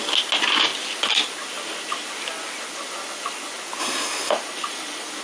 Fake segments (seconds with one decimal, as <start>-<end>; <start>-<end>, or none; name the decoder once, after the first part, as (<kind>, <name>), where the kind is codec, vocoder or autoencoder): 3.8-4.3 (codec, SNAC)